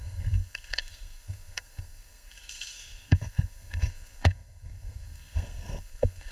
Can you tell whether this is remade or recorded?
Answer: remade